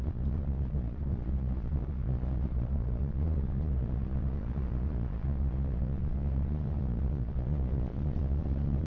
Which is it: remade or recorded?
remade